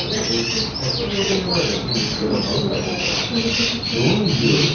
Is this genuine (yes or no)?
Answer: yes